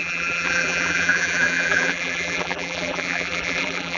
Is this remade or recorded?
remade